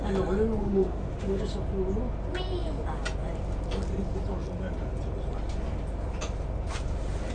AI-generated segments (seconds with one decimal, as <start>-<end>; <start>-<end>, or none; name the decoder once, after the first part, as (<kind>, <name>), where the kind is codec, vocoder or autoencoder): 0.6-1.4 (autoencoder, DAC-VAE)